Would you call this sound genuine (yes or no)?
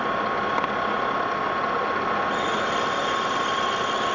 yes